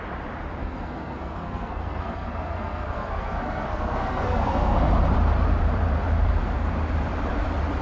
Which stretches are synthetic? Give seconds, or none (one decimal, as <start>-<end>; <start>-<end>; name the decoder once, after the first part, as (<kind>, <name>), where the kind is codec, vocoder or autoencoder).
0.6-4.9 (codec, SNAC)